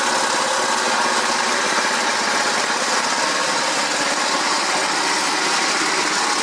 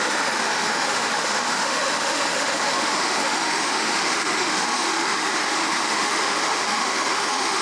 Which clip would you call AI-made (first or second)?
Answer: second